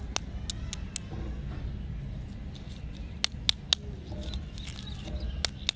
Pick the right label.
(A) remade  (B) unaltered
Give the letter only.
B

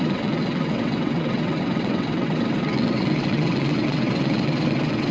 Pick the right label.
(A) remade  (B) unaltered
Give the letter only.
A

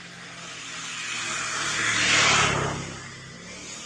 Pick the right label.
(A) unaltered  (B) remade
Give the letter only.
A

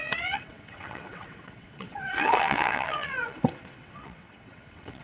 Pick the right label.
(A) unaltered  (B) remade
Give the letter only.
B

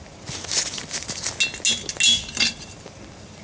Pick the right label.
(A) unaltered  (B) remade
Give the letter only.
A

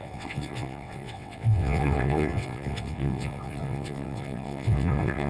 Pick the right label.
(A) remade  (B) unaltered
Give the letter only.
A